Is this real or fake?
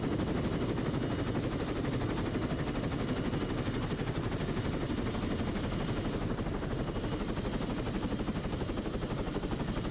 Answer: real